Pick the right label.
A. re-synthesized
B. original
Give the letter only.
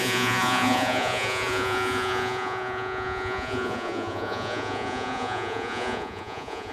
A